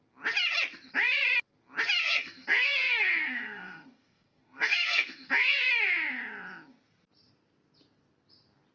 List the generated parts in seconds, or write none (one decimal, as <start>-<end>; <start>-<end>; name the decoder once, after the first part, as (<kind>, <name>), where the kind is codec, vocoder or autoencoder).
2.0-5.7 (codec, SNAC)